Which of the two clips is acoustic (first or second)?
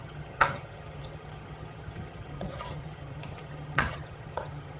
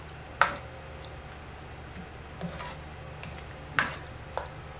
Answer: second